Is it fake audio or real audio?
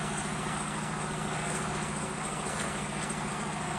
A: fake